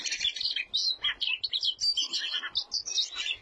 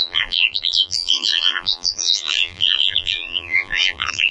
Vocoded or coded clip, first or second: second